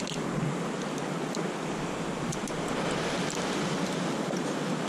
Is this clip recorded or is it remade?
recorded